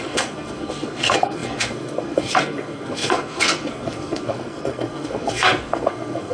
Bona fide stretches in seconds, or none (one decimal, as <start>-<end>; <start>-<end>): none